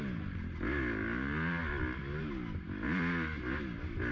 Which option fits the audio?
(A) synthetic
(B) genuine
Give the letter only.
B